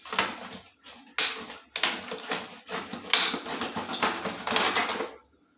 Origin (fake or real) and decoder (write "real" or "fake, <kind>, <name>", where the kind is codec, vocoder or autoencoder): real